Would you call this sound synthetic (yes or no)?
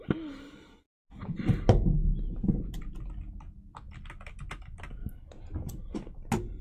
no